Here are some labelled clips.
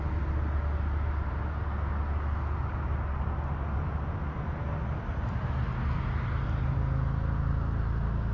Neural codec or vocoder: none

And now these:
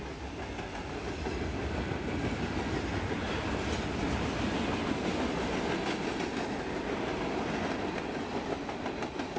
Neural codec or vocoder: none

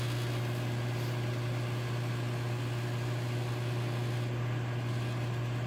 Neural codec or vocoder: none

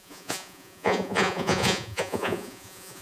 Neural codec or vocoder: vocoder, Vocos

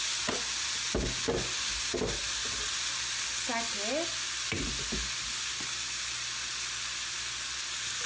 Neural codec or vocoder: none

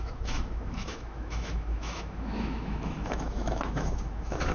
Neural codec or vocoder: autoencoder, DAC-VAE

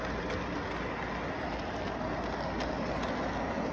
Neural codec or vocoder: none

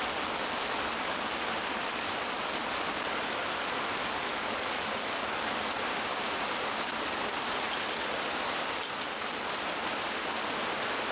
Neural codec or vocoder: none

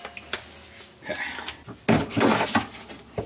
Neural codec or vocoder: none